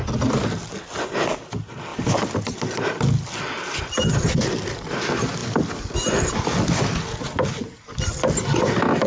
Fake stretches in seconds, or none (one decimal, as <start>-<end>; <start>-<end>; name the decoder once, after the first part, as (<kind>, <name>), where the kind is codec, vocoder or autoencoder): none